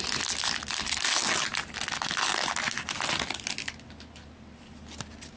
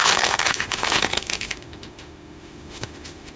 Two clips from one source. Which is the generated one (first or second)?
second